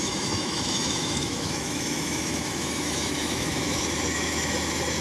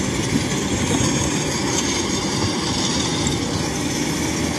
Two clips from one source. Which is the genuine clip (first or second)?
second